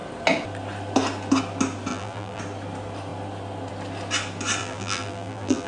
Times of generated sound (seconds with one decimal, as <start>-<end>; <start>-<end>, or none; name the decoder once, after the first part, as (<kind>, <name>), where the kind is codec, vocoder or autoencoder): 1.9-2.4 (vocoder, BigVGAN v2); 4.6-5.7